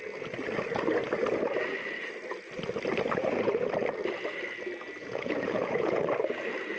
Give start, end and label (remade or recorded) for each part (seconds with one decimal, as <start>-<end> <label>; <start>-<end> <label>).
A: 0.0-5.0 recorded; 5.0-6.0 remade; 6.0-6.8 recorded